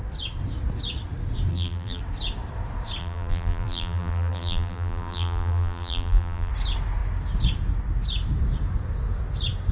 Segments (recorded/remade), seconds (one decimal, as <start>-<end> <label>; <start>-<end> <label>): 0.0-1.5 recorded; 1.5-2.0 remade; 2.0-3.0 recorded; 3.0-6.5 remade; 6.5-9.7 recorded